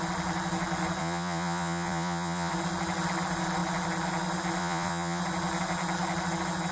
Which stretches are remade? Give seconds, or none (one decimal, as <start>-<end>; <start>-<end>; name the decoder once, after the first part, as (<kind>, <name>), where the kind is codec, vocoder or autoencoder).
1.0-2.5 (vocoder, Vocos); 4.6-5.2